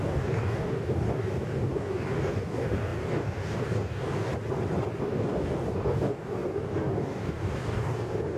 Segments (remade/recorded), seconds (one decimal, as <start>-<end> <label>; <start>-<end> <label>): 0.0-4.3 remade; 4.3-5.0 recorded; 5.0-8.4 remade